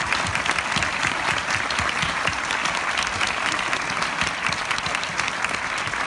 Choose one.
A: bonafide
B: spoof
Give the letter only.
A